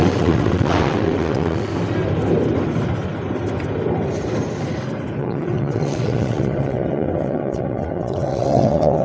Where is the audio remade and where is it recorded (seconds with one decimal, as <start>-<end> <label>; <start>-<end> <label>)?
0.0-1.7 remade; 1.7-5.2 recorded; 5.2-9.0 remade